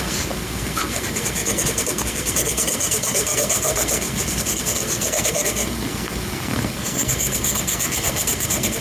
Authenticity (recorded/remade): remade